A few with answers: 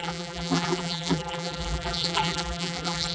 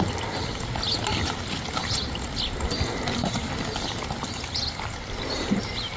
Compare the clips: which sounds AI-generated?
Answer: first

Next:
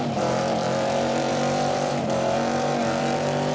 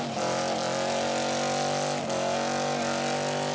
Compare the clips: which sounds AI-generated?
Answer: first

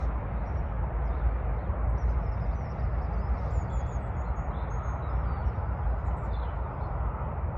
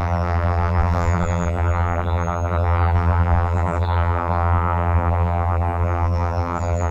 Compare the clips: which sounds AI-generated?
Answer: second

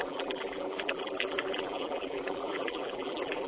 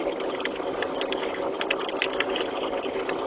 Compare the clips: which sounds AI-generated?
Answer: first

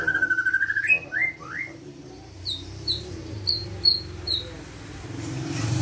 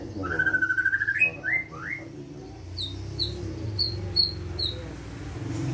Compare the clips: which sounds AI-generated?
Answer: first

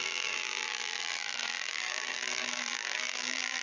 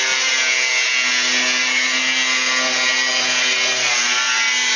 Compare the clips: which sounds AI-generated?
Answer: first